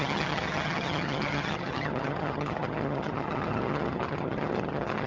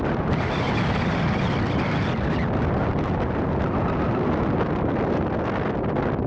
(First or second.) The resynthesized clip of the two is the first